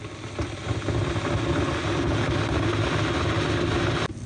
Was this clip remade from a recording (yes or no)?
no